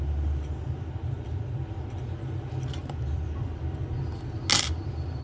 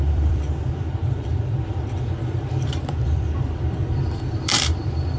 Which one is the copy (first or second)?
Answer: second